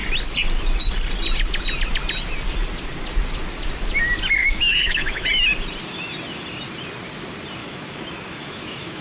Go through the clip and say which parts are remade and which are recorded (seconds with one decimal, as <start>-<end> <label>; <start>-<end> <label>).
0.0-4.4 recorded; 4.4-5.3 remade; 5.3-7.6 recorded; 7.6-9.0 remade